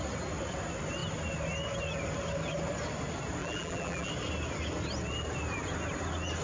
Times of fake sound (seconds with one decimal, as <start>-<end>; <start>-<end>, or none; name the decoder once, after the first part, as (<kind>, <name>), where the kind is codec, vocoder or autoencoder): 3.4-4.1 (vocoder, BigVGAN v2)